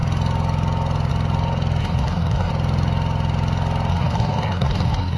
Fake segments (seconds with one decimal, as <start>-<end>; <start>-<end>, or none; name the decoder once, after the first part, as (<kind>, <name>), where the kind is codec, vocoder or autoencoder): 1.8-2.5 (codec, SNAC); 3.9-5.2